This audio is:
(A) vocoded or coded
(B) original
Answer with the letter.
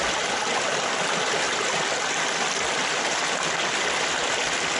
B